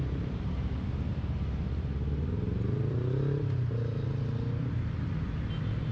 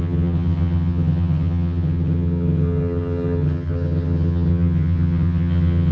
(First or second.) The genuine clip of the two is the first